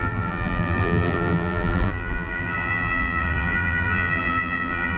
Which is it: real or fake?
fake